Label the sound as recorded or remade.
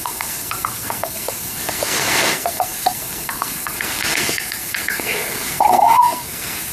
remade